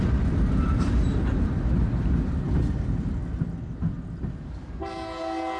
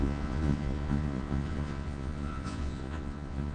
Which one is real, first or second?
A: first